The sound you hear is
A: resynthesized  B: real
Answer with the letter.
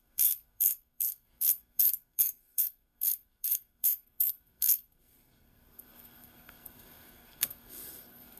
A